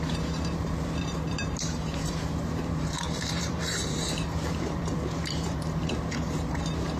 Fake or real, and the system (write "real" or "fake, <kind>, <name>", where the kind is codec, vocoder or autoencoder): fake, vocoder, BigVGAN v2